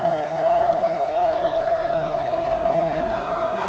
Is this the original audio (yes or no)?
no